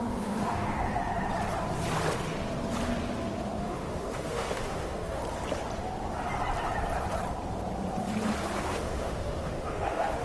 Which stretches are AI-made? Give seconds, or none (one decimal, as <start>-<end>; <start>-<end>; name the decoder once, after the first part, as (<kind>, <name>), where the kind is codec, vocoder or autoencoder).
0.0-1.1 (autoencoder, DAC-VAE); 3.6-5.2; 8.6-10.2